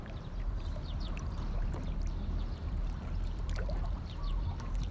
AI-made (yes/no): yes